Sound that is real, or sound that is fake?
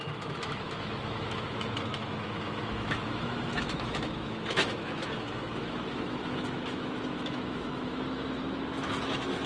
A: fake